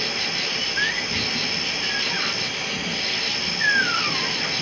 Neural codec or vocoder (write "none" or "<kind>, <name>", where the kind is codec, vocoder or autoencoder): none